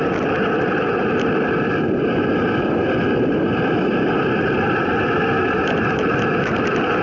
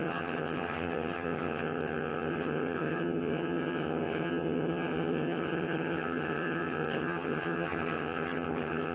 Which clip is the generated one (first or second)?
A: second